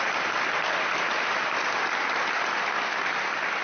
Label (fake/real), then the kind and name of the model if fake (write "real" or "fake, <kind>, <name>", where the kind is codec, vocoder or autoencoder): real